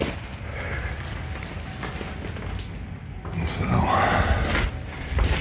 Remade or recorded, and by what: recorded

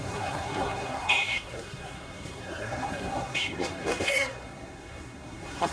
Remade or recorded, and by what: remade, codec, SNAC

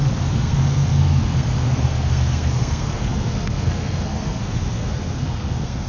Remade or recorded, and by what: remade, codec, SNAC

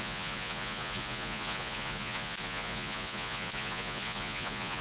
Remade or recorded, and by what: remade, vocoder, Vocos